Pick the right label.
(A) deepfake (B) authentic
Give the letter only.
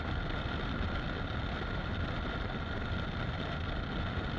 B